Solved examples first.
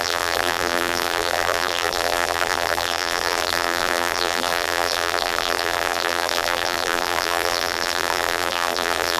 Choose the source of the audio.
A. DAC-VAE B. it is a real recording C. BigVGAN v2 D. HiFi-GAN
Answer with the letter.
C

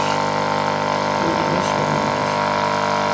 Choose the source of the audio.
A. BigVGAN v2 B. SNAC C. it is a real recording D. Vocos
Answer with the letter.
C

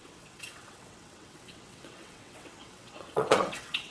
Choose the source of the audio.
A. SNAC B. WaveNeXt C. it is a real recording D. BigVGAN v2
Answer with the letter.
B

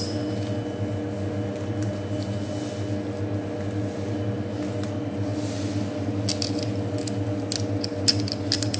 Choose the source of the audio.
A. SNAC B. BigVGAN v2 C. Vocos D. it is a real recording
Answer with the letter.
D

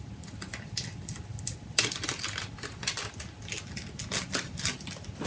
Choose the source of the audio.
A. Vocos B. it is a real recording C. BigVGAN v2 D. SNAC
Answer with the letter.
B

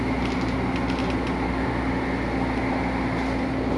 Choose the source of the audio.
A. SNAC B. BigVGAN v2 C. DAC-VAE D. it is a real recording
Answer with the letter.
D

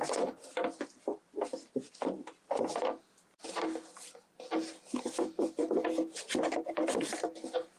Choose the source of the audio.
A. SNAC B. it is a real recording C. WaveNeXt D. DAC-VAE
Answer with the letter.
B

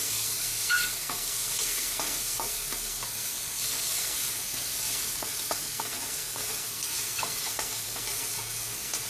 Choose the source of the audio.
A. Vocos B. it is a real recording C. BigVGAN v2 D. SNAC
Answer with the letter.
D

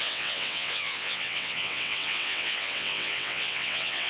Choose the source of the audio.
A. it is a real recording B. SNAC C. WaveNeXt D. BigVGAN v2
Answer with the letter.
C